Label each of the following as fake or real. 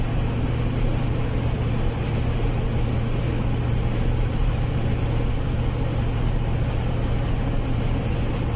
real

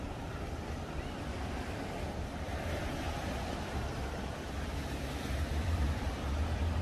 fake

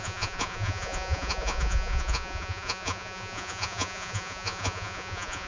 fake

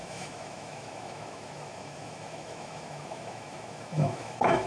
fake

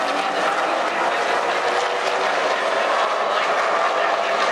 real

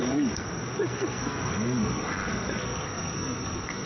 fake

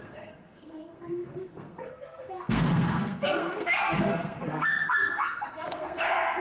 fake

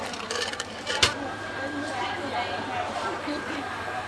fake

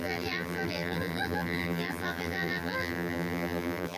fake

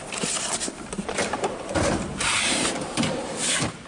fake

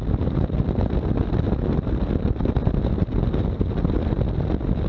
real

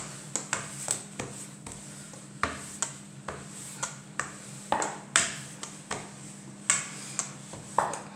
real